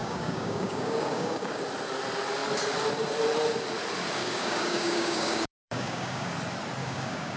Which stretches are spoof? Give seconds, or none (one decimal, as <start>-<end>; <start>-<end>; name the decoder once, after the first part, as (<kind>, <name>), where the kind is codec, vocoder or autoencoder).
0.0-1.6 (codec, DAC); 4.2-6.3; 6.8-7.4

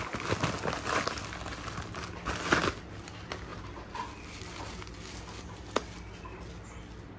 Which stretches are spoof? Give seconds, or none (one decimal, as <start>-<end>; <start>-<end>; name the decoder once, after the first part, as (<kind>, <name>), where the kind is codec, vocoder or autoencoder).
none

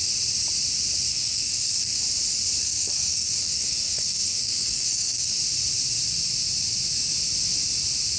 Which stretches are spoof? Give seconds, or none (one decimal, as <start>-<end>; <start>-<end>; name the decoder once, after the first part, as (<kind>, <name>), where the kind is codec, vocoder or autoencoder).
1.1-2.0 (codec, SNAC); 2.6-5.3